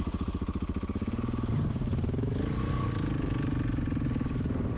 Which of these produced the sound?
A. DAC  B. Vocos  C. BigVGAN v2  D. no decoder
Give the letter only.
D